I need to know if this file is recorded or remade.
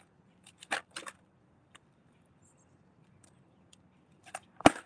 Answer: remade